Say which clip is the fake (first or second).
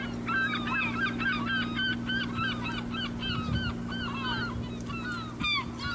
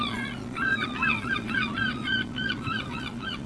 second